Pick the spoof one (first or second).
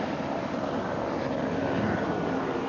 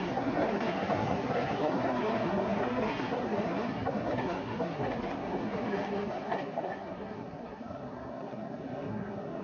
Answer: second